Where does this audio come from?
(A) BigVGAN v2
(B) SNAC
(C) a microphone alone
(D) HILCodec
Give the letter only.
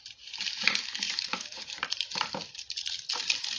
A